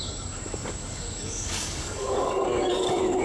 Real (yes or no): no